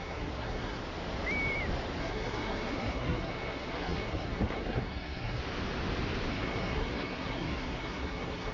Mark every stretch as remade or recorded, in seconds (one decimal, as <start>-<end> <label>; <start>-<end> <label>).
0.0-0.8 remade; 0.8-2.0 recorded; 2.0-5.4 remade; 5.4-6.3 recorded; 6.3-8.5 remade